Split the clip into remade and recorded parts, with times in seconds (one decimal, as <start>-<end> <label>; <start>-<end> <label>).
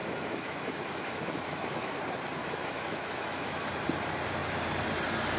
0.0-2.0 remade; 2.0-2.4 recorded; 2.4-3.7 remade; 3.7-5.4 recorded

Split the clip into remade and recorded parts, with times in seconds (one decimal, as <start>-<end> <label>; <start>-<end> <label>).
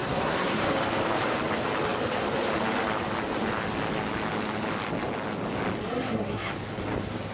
0.0-0.6 remade; 0.6-5.8 recorded; 5.8-6.5 remade; 6.5-7.3 recorded